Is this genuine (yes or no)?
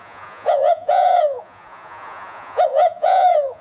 no